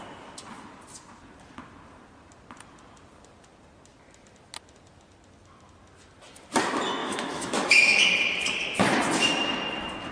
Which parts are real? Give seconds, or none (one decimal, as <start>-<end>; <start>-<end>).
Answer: 0.0-7.0; 8.0-10.1